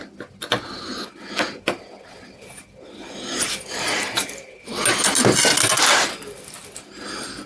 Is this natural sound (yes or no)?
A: yes